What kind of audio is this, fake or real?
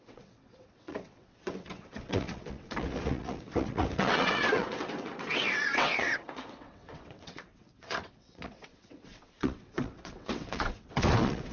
fake